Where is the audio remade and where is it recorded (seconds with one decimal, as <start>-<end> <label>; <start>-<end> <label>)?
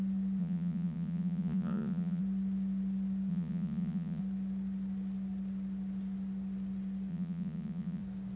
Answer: 0.0-0.4 recorded; 0.4-2.2 remade; 2.2-3.3 recorded; 3.3-4.2 remade; 4.2-7.1 recorded; 7.1-8.0 remade; 8.0-8.4 recorded